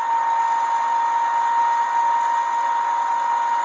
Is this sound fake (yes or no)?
no